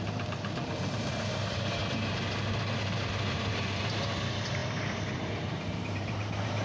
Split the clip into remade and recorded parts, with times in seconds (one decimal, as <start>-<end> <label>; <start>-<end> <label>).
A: 0.0-1.8 remade; 1.8-2.4 recorded; 2.4-6.6 remade